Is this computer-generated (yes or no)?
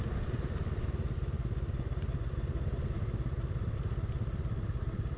no